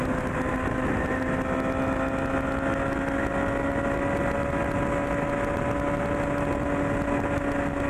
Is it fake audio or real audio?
real